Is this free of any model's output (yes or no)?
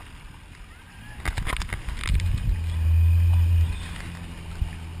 yes